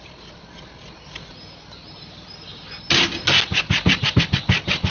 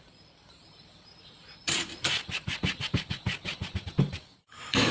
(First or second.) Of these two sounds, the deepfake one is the second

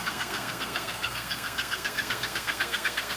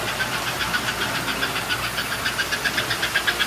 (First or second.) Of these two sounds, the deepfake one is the first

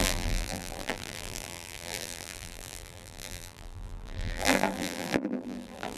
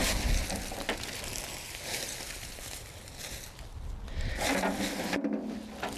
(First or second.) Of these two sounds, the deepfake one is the first